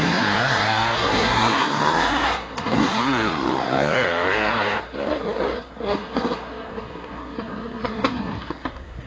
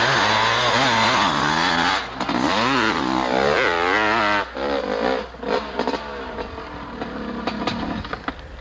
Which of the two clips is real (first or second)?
second